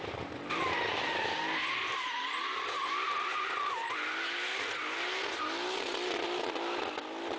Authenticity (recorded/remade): recorded